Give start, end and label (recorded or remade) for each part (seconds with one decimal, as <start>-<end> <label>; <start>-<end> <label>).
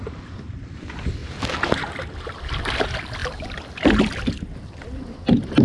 0.0-5.6 recorded